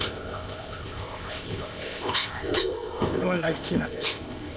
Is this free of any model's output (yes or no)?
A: no